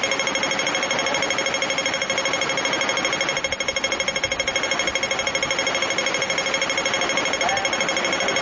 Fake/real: real